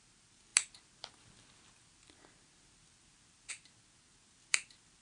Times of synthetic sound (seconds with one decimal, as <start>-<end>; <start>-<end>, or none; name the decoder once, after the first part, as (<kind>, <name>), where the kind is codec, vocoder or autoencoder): none